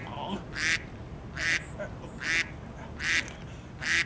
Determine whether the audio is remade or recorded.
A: recorded